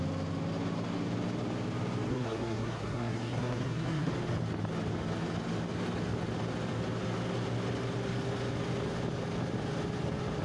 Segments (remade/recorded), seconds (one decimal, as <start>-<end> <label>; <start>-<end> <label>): 0.0-2.1 recorded; 2.1-4.1 remade; 4.1-10.4 recorded